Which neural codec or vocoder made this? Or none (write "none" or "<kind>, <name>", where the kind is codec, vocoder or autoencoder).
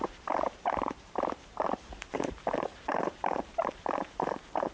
vocoder, BigVGAN v2